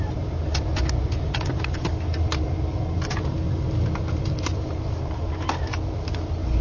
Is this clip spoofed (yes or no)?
no